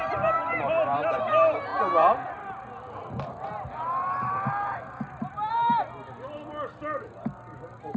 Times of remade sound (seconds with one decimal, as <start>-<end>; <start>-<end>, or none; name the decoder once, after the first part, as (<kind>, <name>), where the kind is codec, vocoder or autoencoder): none